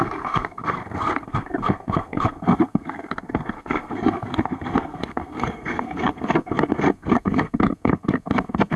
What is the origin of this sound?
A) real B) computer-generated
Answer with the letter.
B